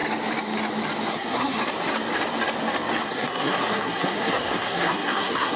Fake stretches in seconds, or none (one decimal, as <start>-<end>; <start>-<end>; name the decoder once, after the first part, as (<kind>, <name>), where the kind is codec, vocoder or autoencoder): 1.1-1.6 (codec, SNAC); 3.0-5.6